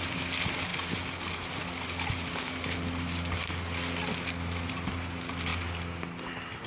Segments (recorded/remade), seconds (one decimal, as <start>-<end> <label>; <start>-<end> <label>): 0.0-6.7 recorded